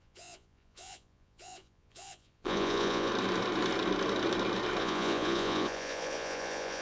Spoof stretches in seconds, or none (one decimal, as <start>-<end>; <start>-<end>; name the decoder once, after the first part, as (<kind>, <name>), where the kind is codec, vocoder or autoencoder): 0.0-3.1 (vocoder, Vocos); 4.8-6.8